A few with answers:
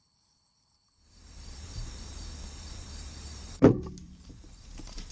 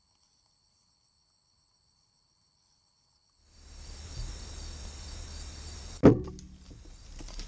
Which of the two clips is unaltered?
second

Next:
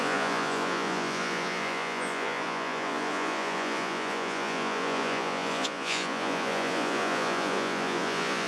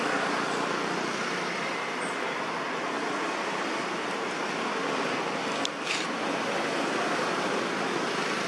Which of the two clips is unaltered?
second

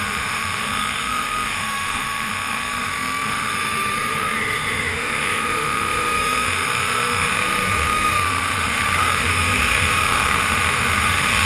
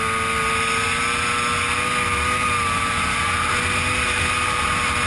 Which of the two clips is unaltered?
second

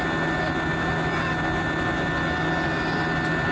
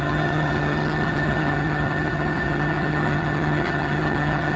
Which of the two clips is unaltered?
first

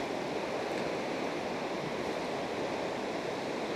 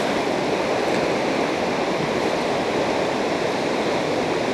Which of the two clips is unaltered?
first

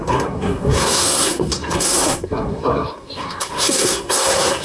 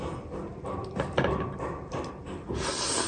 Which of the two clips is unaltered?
second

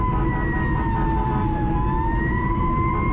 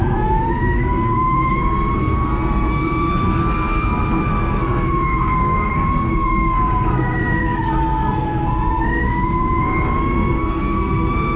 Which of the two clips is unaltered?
first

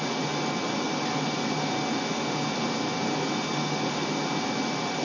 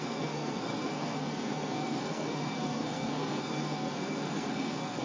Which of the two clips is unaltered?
first